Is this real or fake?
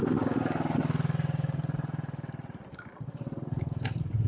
real